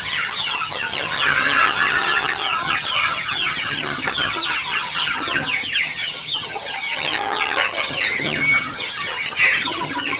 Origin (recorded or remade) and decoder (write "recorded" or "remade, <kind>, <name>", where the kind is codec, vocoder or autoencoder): remade, vocoder, HiFi-GAN